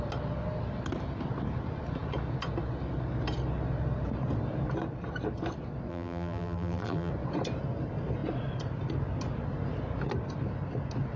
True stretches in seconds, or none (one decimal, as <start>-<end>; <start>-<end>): 0.0-5.9; 7.1-11.2